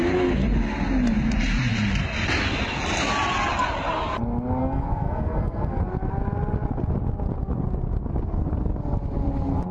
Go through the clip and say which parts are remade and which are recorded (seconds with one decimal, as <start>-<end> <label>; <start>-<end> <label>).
0.0-4.6 recorded; 4.6-5.8 remade; 5.8-9.7 recorded

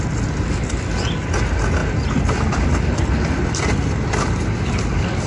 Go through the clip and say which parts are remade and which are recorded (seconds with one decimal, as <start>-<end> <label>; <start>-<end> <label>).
0.0-5.3 recorded

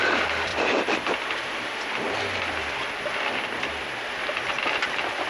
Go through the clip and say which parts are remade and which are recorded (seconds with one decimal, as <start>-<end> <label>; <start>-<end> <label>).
0.0-5.3 remade

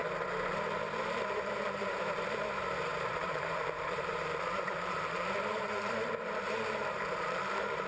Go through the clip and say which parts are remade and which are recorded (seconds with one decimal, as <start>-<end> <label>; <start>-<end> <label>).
0.0-1.1 recorded; 1.1-7.9 remade

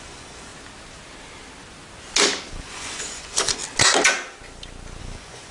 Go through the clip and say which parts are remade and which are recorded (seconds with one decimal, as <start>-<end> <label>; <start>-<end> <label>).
0.0-0.5 remade; 0.5-2.5 recorded; 2.5-3.6 remade; 3.6-5.0 recorded; 5.0-5.5 remade

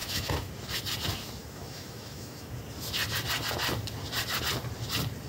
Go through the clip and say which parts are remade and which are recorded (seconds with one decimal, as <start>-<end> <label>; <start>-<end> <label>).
0.0-0.5 remade; 0.5-1.4 recorded; 1.4-2.5 remade; 2.5-5.3 recorded